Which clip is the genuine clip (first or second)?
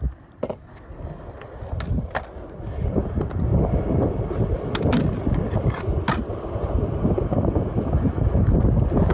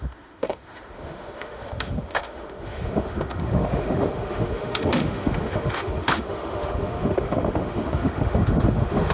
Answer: first